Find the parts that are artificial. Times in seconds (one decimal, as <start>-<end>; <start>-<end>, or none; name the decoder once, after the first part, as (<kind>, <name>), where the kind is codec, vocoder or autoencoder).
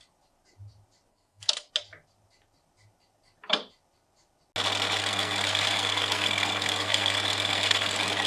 1.1-1.7 (codec, SNAC); 5.0-8.3